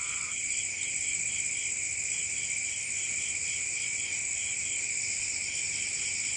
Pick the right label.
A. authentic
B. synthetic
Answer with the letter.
B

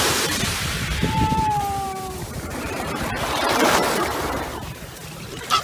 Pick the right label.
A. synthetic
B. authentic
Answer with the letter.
A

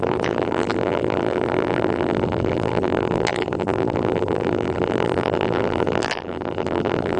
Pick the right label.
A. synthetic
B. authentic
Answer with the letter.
A